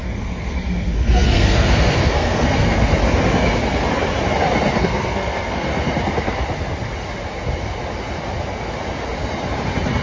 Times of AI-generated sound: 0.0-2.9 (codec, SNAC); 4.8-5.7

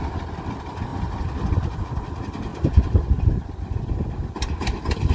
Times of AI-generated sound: 0.9-1.8 (vocoder, BigVGAN v2); 2.5-3.9

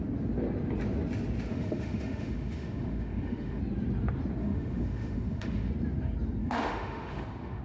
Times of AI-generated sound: 1.5-3.6 (autoencoder, DAC-VAE); 4.4-5.7; 6.4-7.6

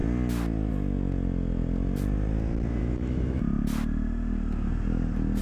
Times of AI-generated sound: 2.8-3.4 (autoencoder, DAC-VAE)